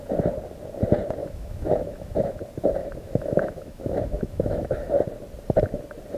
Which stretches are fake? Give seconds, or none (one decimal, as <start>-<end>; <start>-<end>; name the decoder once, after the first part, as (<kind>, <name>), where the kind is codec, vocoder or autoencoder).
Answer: 1.2-2.4 (autoencoder, DAC-VAE); 2.8-4.9